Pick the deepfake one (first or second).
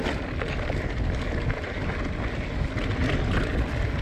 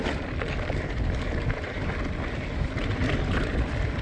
second